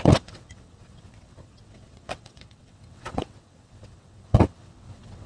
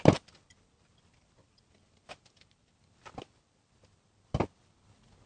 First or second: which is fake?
first